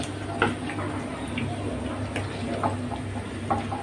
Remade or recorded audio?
recorded